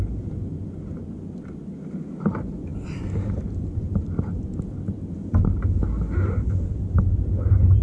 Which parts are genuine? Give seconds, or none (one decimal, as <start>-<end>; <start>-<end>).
0.0-7.8